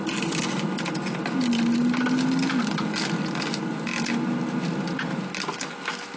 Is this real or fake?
real